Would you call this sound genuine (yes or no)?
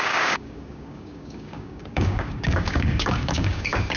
no